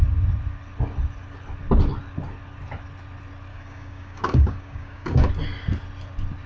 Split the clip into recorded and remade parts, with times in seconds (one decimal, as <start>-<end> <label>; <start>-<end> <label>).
0.0-3.5 recorded; 3.5-5.3 remade; 5.3-6.5 recorded